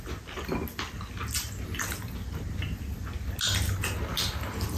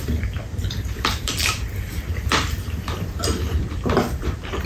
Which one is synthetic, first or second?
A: second